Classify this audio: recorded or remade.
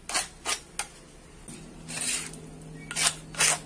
recorded